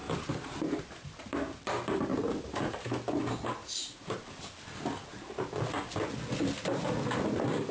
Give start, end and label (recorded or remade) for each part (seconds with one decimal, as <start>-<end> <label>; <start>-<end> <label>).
0.0-1.6 remade; 1.6-2.1 recorded; 2.1-3.2 remade; 3.2-3.6 recorded; 3.6-4.4 remade; 4.4-7.7 recorded